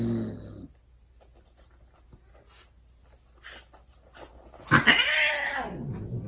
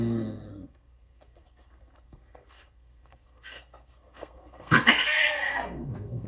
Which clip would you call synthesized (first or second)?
second